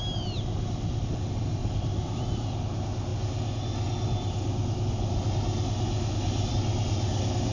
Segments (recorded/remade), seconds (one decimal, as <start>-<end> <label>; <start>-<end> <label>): 0.0-1.6 recorded; 1.6-2.6 remade; 2.6-7.5 recorded